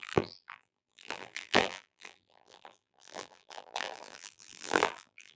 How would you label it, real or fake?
fake